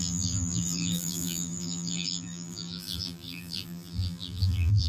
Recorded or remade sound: remade